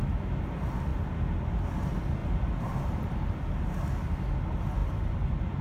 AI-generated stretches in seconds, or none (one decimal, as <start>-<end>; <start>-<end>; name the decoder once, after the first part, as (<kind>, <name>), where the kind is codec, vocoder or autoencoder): 2.2-3.3 (vocoder, BigVGAN v2); 4.8-5.6